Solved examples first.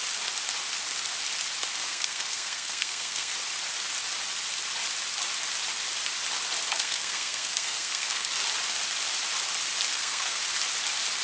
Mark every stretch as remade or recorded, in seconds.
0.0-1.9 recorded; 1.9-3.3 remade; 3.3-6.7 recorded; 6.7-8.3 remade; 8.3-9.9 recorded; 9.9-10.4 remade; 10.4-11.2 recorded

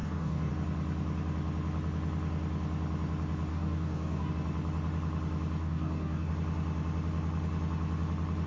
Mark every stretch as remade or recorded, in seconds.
0.0-0.5 remade; 0.5-3.5 recorded; 3.5-4.3 remade; 4.3-5.6 recorded; 5.6-6.3 remade; 6.3-8.5 recorded

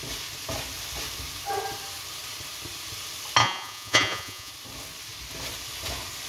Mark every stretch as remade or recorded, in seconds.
0.0-3.4 recorded; 3.4-4.5 remade; 4.5-6.3 recorded

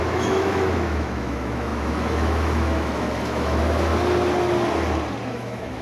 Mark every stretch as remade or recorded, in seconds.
0.0-3.9 remade; 3.9-5.3 recorded; 5.3-5.8 remade

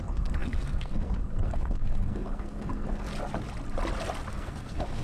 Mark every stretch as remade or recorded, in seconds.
0.0-3.1 remade; 3.1-4.3 recorded; 4.3-5.0 remade

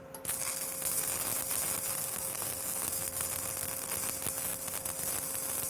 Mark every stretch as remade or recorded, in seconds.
0.0-1.9 recorded; 1.9-2.9 remade; 2.9-5.7 recorded

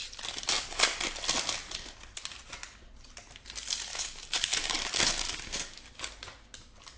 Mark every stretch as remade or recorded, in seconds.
0.0-3.9 recorded; 3.9-5.9 remade; 5.9-7.0 recorded